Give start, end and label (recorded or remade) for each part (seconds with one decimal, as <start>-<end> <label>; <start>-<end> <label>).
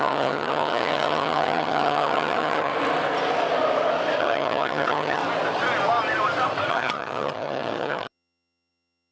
0.0-2.7 remade; 2.7-4.2 recorded; 4.2-5.2 remade; 5.2-6.7 recorded; 6.7-9.1 remade